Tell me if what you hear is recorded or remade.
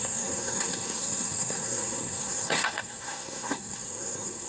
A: remade